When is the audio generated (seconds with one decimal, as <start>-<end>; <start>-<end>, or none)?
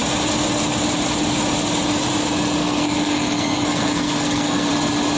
2.6-4.7